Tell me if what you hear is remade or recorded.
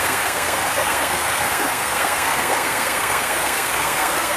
remade